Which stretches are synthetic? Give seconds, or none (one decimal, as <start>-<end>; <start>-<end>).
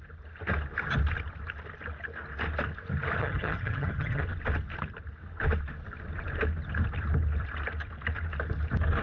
3.2-4.2